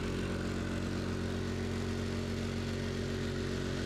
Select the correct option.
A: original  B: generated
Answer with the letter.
A